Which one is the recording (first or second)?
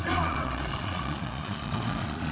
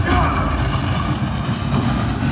second